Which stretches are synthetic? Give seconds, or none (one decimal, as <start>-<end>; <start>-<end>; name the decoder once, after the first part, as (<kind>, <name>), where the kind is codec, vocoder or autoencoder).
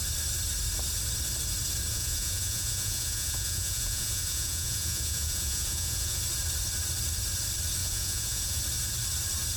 1.9-6.2 (vocoder, Vocos); 7.8-8.6